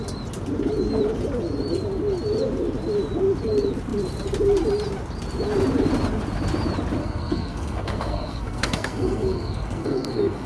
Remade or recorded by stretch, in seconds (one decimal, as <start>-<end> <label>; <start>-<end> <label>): 0.0-7.0 recorded; 7.0-10.5 remade